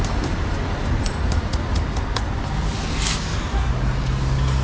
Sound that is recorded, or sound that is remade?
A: recorded